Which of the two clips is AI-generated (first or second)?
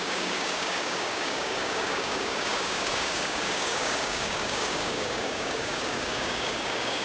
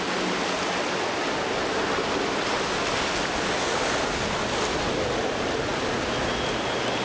first